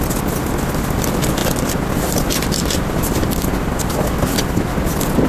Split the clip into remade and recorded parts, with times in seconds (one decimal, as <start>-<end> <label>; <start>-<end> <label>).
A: 0.0-1.4 recorded; 1.4-4.6 remade; 4.6-5.3 recorded